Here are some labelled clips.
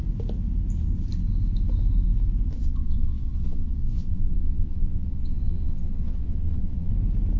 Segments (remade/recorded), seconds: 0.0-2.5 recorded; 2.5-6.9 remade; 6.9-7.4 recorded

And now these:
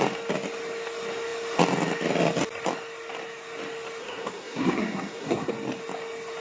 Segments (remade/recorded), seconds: 0.0-4.0 recorded; 4.0-5.5 remade; 5.5-6.4 recorded

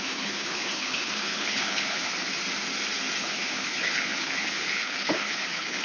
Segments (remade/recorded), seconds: 0.0-2.1 remade; 2.1-3.2 recorded; 3.2-5.8 remade

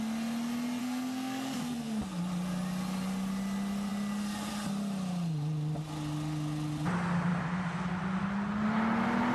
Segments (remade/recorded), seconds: 0.0-0.8 recorded; 0.8-2.0 remade; 2.0-9.3 recorded

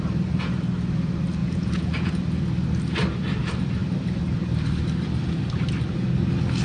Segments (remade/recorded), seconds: 0.0-1.4 recorded; 1.4-2.1 remade; 2.1-6.6 recorded

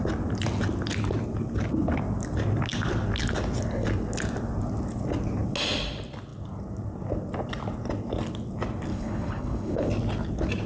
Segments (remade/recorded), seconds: 0.0-8.9 recorded; 8.9-9.9 remade; 9.9-10.7 recorded